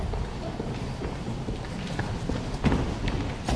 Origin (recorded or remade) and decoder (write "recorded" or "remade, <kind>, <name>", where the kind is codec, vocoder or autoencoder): recorded